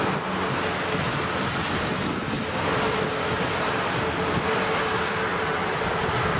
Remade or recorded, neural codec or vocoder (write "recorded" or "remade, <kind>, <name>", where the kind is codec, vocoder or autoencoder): recorded